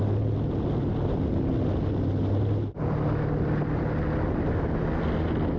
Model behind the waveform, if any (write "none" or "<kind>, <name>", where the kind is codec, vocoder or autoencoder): none